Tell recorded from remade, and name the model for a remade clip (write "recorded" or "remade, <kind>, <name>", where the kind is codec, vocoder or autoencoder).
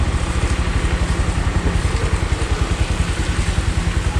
recorded